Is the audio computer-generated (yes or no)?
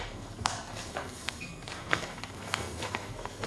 yes